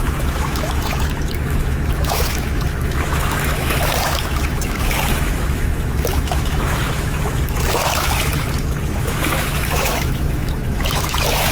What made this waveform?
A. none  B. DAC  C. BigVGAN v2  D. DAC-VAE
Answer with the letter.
D